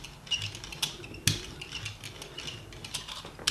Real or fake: real